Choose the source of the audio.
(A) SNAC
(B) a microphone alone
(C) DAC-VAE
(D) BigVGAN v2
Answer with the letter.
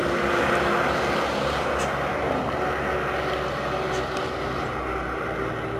B